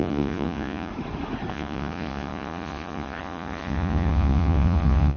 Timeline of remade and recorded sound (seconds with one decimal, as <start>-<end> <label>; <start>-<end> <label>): 0.0-0.9 remade; 0.9-1.5 recorded; 1.5-5.2 remade